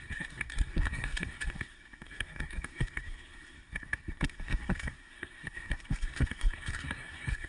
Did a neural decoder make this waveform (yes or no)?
yes